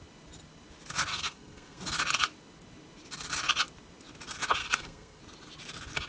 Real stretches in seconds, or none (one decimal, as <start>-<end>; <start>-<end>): 0.0-1.1; 1.8-4.6; 5.2-6.1